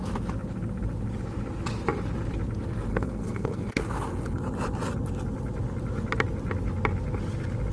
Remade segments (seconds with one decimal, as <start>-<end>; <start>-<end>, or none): 2.9-3.7